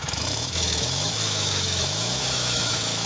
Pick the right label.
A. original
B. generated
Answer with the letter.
B